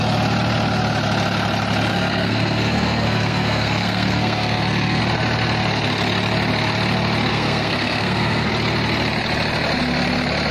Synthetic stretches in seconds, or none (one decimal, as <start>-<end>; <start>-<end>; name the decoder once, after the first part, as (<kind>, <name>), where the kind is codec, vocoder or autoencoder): 1.9-5.0 (codec, SNAC); 7.3-8.5